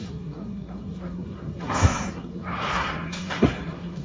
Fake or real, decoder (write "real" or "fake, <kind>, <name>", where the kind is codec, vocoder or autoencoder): fake, codec, SNAC